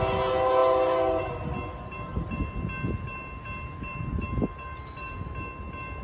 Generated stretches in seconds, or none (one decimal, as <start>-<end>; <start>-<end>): none